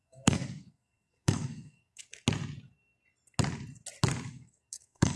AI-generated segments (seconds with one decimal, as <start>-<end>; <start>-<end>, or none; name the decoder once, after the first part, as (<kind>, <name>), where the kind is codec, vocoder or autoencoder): 0.0-2.0 (codec, SNAC); 4.3-5.2